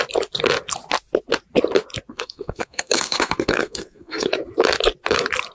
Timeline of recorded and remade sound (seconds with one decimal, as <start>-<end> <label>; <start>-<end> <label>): 0.0-2.1 recorded; 2.1-4.3 remade; 4.3-5.5 recorded